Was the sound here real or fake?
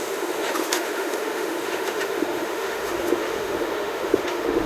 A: fake